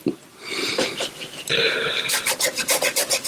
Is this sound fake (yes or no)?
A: yes